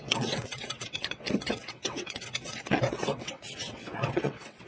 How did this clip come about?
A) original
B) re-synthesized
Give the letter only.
B